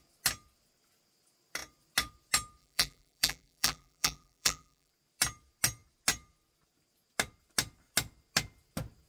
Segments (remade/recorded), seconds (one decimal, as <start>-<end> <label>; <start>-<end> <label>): 0.0-2.6 recorded; 2.6-4.9 remade; 4.9-9.1 recorded